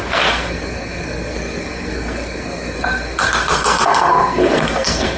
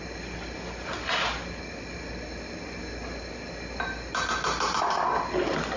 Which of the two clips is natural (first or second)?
second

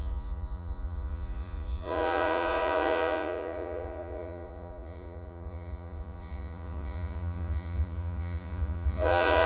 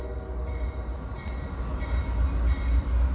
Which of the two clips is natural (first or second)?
second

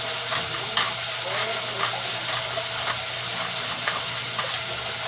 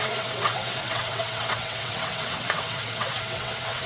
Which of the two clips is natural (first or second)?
first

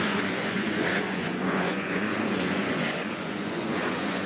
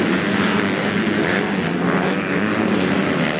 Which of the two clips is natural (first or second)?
second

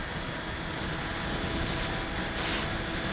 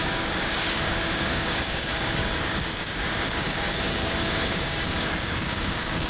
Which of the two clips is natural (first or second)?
first